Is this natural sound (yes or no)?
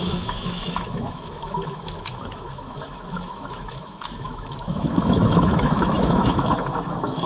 no